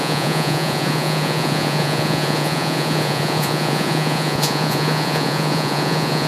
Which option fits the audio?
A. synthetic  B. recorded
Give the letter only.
A